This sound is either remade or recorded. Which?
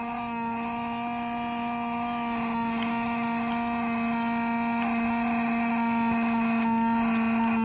recorded